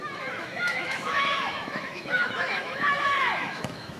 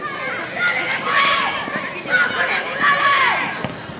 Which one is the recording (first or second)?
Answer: second